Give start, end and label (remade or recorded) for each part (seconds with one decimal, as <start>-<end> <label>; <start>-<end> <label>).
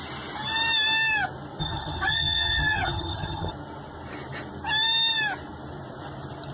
0.0-1.6 recorded; 1.6-3.5 remade; 3.5-6.5 recorded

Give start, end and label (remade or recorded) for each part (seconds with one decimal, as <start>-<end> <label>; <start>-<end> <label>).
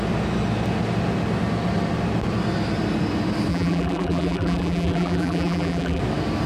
0.0-3.5 recorded; 3.5-6.0 remade; 6.0-6.5 recorded